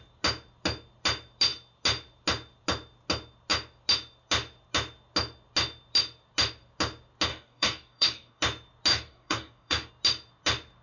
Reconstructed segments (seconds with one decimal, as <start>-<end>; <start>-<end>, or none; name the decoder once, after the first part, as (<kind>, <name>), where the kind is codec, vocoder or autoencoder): 7.3-8.4 (codec, DAC); 8.9-9.9